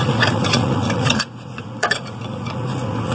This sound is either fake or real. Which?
fake